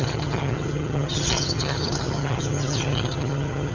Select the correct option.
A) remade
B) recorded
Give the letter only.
A